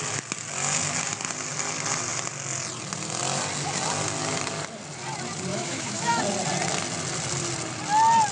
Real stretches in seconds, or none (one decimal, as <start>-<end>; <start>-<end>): 0.0-5.5; 6.2-8.3